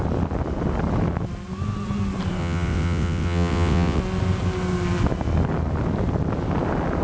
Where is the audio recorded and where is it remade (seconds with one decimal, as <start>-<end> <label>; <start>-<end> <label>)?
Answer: 0.0-2.4 recorded; 2.4-4.0 remade; 4.0-7.0 recorded